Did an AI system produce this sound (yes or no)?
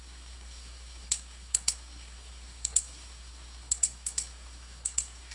yes